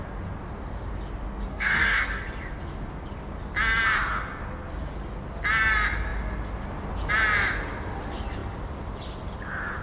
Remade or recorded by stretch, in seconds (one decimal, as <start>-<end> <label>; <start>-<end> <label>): 0.0-1.5 recorded; 1.5-2.2 remade; 2.2-9.8 recorded